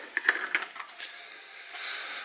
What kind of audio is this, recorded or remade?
recorded